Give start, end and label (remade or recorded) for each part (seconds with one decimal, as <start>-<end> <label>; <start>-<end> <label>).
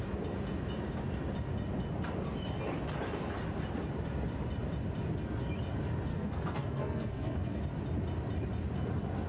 0.0-6.1 recorded; 6.1-7.6 remade; 7.6-9.3 recorded